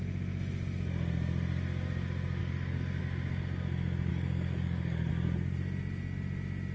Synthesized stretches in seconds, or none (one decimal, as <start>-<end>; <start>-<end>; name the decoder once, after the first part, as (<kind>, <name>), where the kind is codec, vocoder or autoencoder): 2.4-3.0 (codec, DAC); 4.1-5.1